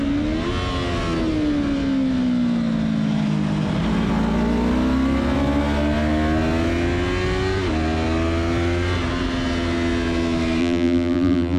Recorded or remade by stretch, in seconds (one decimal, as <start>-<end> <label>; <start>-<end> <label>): 0.0-10.6 recorded; 10.6-11.6 remade